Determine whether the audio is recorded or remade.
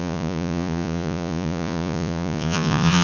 remade